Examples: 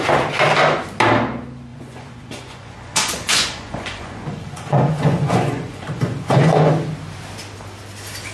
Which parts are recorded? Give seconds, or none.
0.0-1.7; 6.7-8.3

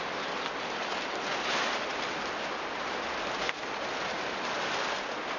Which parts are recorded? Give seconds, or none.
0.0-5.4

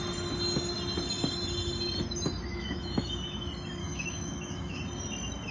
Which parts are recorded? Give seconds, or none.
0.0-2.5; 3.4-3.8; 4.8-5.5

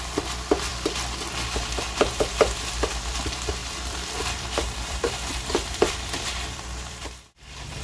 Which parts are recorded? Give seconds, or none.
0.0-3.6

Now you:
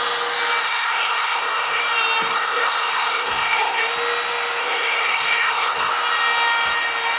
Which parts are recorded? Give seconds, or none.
0.0-0.6; 1.8-2.3; 3.8-4.6; 5.9-7.2

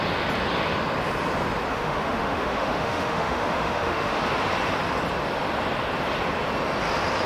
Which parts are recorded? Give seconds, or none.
0.0-1.7; 4.2-7.3